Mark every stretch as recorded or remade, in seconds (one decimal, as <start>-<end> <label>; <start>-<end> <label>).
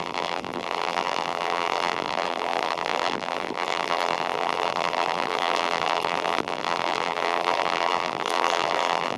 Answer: 0.0-9.2 remade